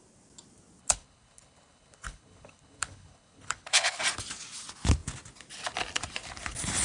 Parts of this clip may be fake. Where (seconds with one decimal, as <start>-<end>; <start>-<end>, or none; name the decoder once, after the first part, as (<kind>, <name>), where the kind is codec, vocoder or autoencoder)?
0.8-4.0 (codec, HILCodec)